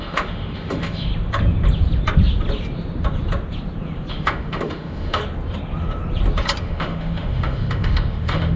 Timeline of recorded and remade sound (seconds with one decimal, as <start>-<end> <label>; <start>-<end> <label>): 0.0-1.1 remade; 1.1-4.1 recorded; 4.1-5.2 remade; 5.2-6.6 recorded; 6.6-8.6 remade